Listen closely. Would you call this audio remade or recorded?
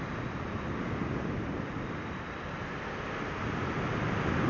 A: recorded